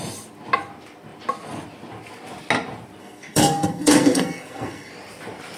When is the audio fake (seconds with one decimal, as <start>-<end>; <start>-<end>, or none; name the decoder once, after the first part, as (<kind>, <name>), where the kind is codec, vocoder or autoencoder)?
3.0-4.9 (codec, SNAC)